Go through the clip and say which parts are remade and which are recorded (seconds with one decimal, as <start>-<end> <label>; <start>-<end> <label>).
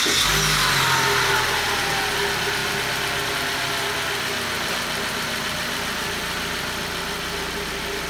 0.0-8.1 recorded